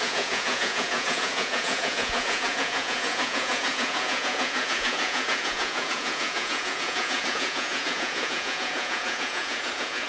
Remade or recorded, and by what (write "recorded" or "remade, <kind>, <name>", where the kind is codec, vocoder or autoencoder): remade, vocoder, Vocos